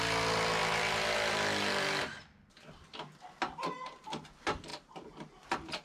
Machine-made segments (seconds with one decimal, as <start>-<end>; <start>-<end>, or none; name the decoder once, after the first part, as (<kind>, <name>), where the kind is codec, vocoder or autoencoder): none